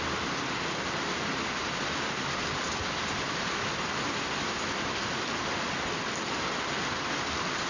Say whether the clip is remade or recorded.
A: recorded